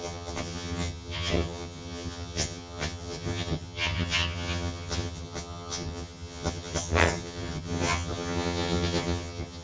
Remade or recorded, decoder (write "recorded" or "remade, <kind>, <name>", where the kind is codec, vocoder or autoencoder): remade, vocoder, HiFi-GAN